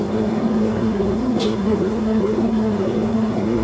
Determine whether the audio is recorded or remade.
remade